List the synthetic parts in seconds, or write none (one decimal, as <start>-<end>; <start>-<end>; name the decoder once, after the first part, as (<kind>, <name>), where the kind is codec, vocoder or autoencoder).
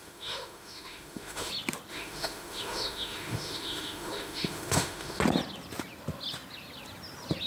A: 0.0-1.5 (autoencoder, DAC-VAE); 1.9-5.2